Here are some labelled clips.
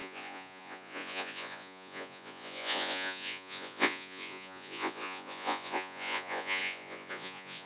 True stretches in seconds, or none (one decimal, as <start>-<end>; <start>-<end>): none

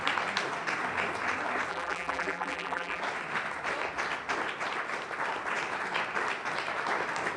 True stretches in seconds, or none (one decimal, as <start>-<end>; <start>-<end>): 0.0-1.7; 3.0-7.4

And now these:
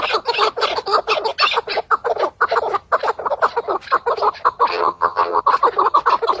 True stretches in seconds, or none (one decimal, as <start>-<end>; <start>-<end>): 0.0-4.7; 5.4-6.4

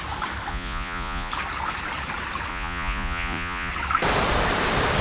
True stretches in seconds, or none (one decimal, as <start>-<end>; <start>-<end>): 0.0-0.5; 1.3-2.5; 3.7-5.0